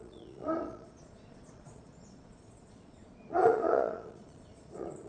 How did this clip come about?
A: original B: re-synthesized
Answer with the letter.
B